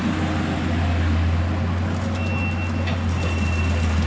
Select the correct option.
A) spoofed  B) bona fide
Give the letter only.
B